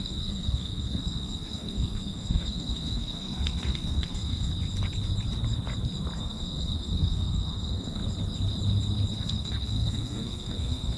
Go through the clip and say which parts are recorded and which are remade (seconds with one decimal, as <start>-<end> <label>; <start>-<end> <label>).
0.0-4.5 remade; 4.5-6.2 recorded; 6.2-8.0 remade; 8.0-9.2 recorded; 9.2-11.0 remade